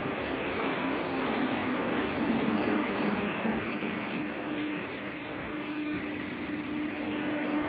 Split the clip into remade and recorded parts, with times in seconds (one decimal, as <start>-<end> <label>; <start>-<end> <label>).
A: 0.0-6.0 remade; 6.0-6.9 recorded; 6.9-7.7 remade